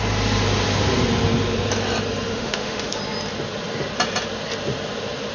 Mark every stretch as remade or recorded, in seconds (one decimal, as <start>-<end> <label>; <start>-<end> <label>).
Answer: 0.0-2.3 recorded; 2.3-3.0 remade; 3.0-5.3 recorded